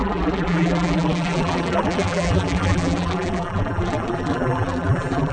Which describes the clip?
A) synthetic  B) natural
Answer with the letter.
A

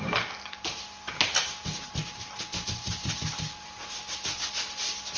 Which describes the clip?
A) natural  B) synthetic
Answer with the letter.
A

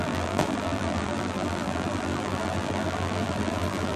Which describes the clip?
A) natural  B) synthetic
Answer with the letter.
B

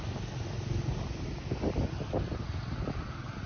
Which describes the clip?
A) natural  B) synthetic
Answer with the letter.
A